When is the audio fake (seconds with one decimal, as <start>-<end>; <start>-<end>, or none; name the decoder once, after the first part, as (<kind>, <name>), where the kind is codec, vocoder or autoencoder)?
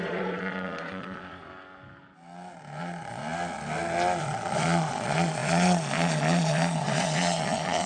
0.0-1.5 (vocoder, Vocos); 2.8-3.2; 4.2-7.9